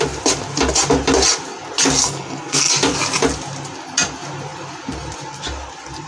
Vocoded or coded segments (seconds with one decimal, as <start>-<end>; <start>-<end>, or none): 2.0-2.7